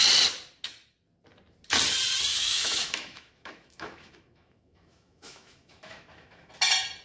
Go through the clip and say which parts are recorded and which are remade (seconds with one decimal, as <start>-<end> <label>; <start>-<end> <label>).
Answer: 0.0-2.3 recorded; 2.3-6.5 remade; 6.5-7.0 recorded